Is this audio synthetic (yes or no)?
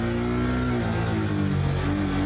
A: no